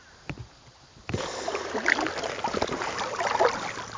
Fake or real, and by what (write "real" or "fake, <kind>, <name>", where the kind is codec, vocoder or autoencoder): real